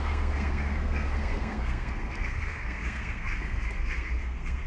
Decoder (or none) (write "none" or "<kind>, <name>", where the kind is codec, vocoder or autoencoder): codec, SNAC